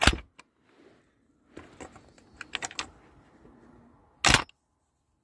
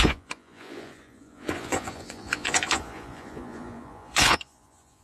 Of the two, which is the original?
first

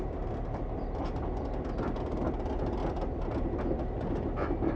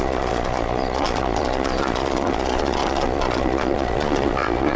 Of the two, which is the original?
first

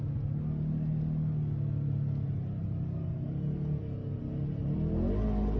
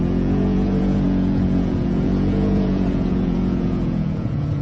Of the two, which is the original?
first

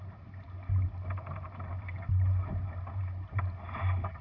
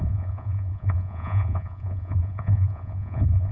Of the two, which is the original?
first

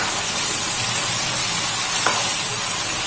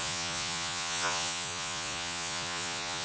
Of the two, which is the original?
first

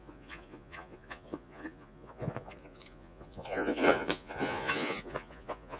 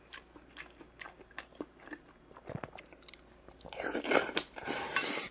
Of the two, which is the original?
second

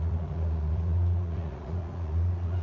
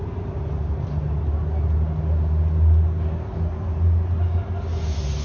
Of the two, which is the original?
second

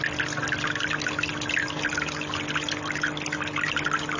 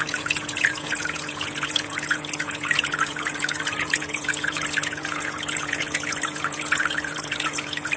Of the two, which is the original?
first